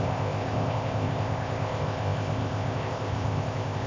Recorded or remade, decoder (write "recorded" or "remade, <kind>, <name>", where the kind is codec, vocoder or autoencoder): remade, codec, ZipCodec